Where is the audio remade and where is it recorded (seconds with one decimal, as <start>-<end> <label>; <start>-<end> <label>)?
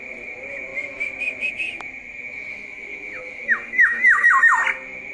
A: 0.0-2.5 recorded; 2.5-4.3 remade; 4.3-5.1 recorded